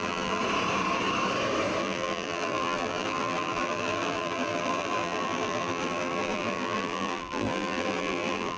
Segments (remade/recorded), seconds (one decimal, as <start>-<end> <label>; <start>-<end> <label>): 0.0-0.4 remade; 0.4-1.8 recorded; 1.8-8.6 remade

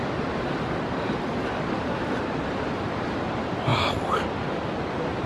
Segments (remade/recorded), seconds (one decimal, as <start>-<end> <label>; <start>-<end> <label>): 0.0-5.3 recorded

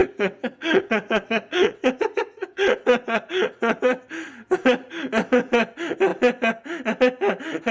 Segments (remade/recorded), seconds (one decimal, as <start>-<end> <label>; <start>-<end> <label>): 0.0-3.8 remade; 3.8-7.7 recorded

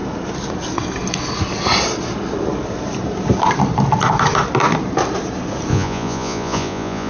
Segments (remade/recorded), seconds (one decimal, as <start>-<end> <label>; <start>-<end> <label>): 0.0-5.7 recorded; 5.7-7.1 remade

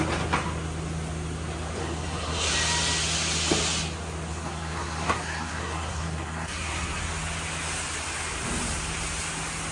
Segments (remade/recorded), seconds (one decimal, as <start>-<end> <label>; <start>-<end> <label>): 0.0-1.8 recorded; 1.8-2.5 remade; 2.5-4.3 recorded; 4.3-7.1 remade; 7.1-9.7 recorded